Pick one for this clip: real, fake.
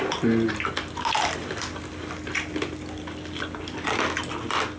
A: real